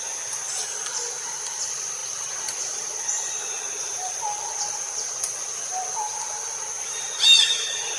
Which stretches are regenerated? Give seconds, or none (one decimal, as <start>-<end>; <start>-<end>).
2.0-3.4